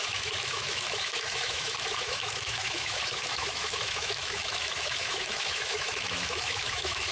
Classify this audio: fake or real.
fake